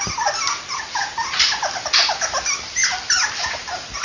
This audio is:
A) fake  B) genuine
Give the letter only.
B